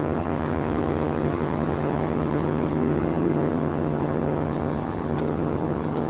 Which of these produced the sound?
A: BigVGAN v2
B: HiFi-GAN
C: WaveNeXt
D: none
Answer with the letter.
B